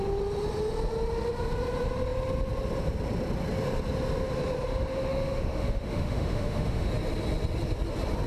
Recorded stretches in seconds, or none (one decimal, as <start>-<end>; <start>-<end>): 0.0-4.9; 6.9-8.3